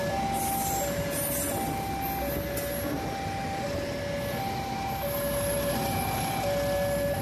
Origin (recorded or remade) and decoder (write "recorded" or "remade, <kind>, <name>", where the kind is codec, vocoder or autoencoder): recorded